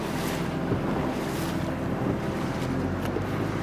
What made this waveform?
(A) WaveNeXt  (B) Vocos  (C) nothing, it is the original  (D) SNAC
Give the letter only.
C